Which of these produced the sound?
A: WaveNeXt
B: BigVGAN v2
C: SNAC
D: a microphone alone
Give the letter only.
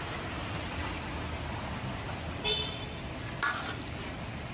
D